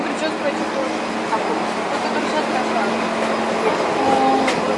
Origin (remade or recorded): recorded